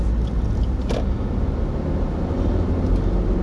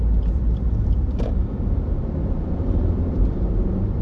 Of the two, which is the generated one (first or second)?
second